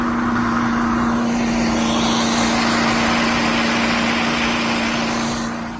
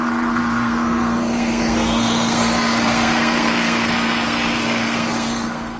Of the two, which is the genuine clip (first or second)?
first